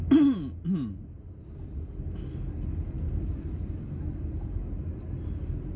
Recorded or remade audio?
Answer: recorded